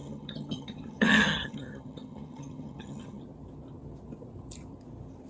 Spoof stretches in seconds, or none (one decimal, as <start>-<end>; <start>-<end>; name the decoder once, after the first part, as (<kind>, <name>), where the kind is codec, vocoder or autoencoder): 0.0-3.2 (vocoder, HiFi-GAN)